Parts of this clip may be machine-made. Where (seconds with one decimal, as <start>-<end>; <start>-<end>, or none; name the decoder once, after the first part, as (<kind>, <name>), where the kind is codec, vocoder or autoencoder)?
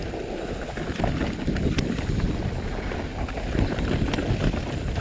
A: none